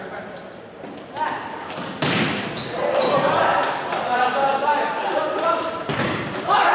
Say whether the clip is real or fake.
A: fake